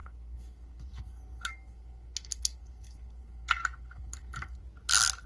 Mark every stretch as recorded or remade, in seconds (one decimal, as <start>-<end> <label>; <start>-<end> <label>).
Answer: 0.0-4.6 remade; 4.6-5.3 recorded